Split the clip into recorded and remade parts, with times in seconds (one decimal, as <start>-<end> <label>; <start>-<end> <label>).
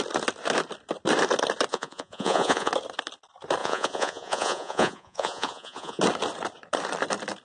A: 0.0-1.7 recorded; 1.7-2.7 remade; 2.7-3.6 recorded; 3.6-6.0 remade; 6.0-7.4 recorded